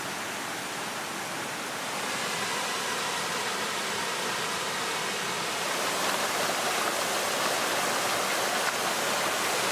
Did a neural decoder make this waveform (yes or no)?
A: no